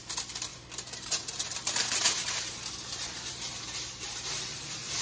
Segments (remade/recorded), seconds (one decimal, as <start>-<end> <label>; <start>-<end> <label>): 0.0-0.5 recorded; 0.5-3.5 remade; 3.5-5.0 recorded